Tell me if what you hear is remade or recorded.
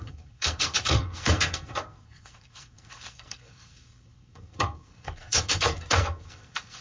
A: remade